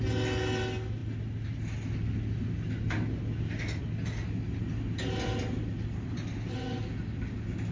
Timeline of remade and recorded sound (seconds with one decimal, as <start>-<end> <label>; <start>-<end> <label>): 0.0-7.7 recorded